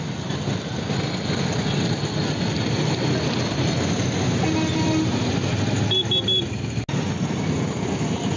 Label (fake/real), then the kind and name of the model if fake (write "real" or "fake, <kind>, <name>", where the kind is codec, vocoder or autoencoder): real